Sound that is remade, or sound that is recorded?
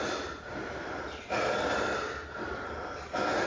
recorded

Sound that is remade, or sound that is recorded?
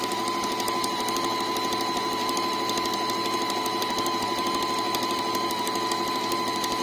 recorded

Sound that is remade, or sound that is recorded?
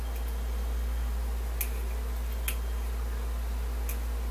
recorded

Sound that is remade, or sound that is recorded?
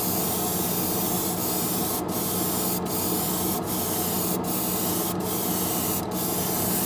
recorded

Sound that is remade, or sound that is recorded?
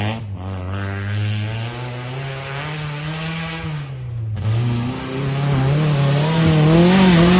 recorded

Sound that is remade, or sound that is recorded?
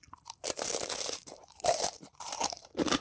remade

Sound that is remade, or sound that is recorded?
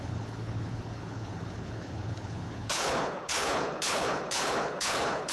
remade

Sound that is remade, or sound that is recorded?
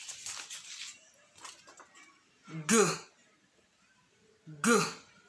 recorded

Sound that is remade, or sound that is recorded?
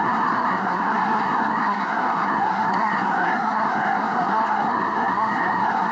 remade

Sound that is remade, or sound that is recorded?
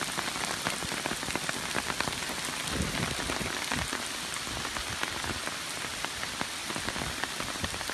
recorded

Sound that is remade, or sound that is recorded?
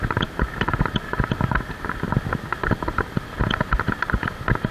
recorded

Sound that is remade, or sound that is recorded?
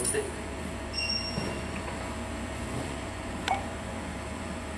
remade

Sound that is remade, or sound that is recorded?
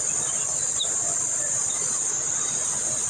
recorded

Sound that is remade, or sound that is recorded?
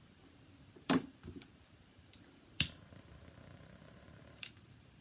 remade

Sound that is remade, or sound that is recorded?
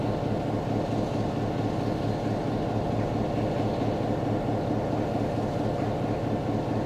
recorded